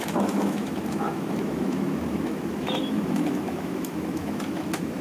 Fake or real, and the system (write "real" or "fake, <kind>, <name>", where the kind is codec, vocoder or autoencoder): fake, autoencoder, DAC-VAE